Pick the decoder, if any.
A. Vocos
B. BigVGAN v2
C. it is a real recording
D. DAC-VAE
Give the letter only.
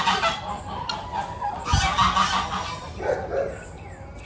C